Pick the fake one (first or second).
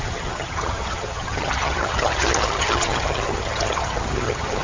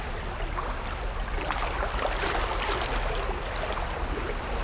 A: first